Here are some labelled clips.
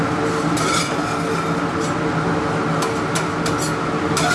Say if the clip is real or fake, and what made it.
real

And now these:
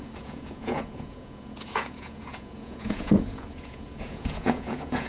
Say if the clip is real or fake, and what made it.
fake, vocoder, Vocos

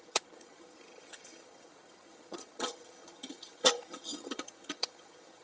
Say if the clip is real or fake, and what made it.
fake, vocoder, HiFi-GAN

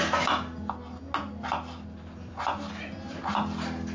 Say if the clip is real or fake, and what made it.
real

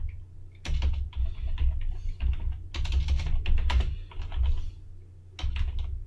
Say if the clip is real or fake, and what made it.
real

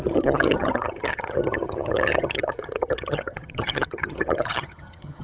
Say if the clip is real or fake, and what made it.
fake, vocoder, HiFi-GAN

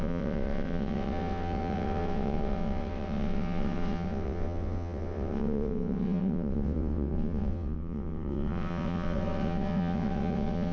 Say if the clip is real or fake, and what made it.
fake, vocoder, WaveNeXt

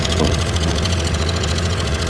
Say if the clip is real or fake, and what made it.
fake, vocoder, WaveNeXt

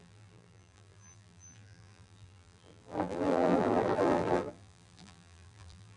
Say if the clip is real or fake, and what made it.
fake, vocoder, BigVGAN v2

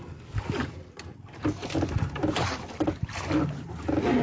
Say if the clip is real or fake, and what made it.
real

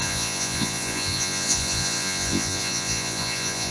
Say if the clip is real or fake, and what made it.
fake, vocoder, Vocos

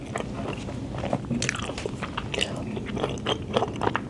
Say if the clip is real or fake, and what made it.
real